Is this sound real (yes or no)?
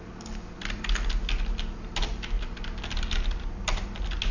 yes